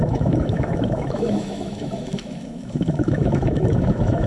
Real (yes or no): no